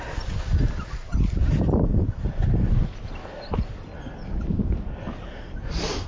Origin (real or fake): real